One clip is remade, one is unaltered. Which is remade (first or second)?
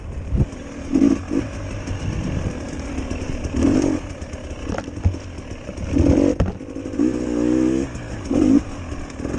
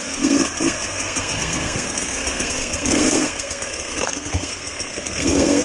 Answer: second